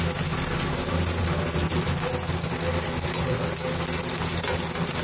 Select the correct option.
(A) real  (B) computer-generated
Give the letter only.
A